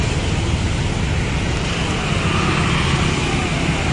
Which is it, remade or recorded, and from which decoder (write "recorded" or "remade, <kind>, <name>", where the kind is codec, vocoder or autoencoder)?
recorded